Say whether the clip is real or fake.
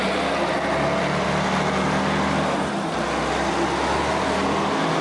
real